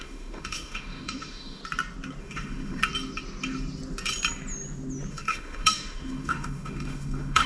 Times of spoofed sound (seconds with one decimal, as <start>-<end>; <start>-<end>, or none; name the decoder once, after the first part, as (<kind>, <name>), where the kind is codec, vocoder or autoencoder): 0.0-1.6 (autoencoder, DAC-VAE); 2.2-2.8; 5.1-7.5